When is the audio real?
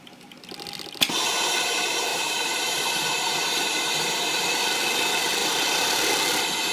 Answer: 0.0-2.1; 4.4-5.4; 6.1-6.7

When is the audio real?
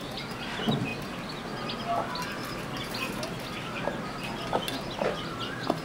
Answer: 0.0-5.8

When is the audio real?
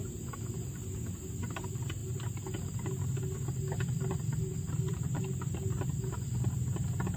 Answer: 0.0-2.0; 2.9-4.5; 6.1-7.2